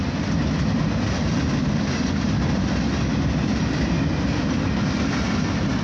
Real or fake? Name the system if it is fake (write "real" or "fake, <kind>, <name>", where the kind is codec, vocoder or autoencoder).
real